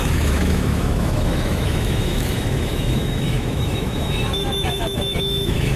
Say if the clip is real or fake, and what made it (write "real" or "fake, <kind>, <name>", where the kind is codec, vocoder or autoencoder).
fake, autoencoder, DAC-VAE